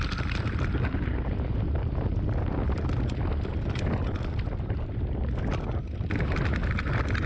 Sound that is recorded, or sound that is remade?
recorded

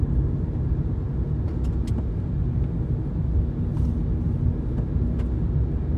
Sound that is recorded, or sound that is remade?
recorded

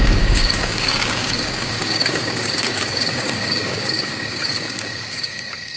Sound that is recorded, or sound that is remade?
remade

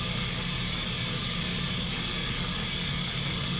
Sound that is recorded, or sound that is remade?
remade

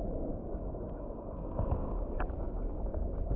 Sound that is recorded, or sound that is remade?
remade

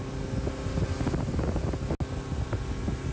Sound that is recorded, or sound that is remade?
recorded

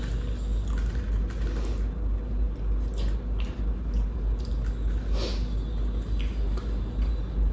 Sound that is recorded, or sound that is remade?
recorded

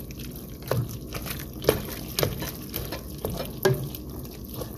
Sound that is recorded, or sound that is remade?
recorded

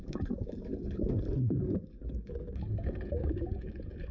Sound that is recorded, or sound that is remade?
remade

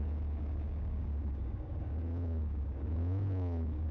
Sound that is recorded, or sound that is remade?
remade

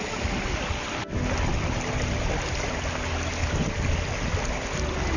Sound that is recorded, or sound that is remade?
recorded